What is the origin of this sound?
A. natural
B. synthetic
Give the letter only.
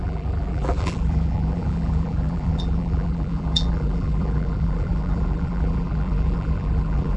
B